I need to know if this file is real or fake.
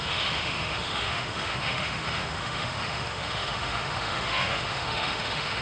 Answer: fake